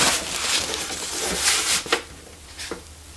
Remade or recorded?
recorded